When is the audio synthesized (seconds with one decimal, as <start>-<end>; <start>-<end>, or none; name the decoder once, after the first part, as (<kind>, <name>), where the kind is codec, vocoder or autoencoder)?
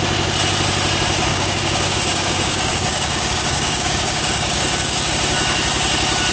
1.3-5.1 (codec, DAC)